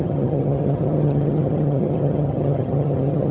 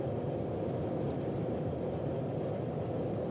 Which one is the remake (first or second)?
first